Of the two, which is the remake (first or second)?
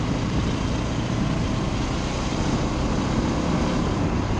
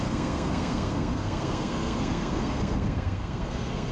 second